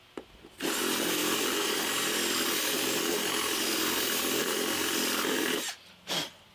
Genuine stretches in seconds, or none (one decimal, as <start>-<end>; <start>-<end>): 0.0-6.5